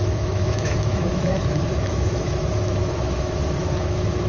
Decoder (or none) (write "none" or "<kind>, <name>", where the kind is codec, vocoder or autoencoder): autoencoder, DAC-VAE